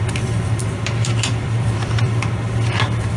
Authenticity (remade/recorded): remade